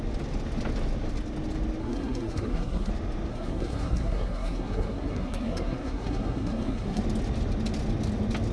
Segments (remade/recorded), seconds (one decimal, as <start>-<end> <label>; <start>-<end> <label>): 0.0-1.8 recorded; 1.8-2.9 remade; 2.9-3.3 recorded; 3.3-7.0 remade; 7.0-8.5 recorded

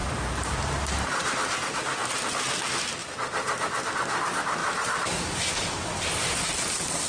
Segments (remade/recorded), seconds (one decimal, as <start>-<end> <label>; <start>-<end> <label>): 0.0-2.1 remade; 2.1-3.0 recorded; 3.0-3.9 remade; 3.9-4.6 recorded; 4.6-5.5 remade; 5.5-7.1 recorded

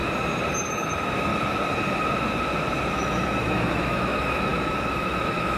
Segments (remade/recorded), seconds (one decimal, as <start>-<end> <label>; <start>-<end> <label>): 0.0-0.7 recorded; 0.7-1.3 remade; 1.3-2.9 recorded; 2.9-5.6 remade

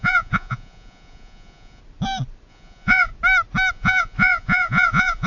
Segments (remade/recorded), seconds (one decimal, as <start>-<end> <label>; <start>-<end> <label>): 0.0-1.8 remade; 1.8-2.5 recorded; 2.5-3.1 remade; 3.1-3.7 recorded; 3.7-5.3 remade

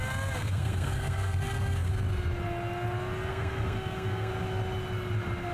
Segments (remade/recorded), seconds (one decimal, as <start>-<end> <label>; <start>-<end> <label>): 0.0-0.4 recorded; 0.4-1.9 remade; 1.9-3.3 recorded; 3.3-4.3 remade; 4.3-5.5 recorded